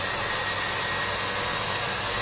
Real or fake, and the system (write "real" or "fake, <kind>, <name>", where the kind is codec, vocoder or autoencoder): real